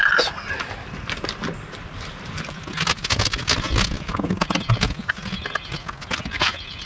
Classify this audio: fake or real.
real